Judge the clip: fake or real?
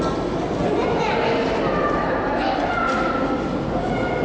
real